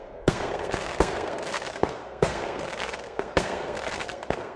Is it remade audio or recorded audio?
remade